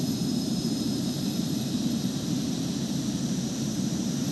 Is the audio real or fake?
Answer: fake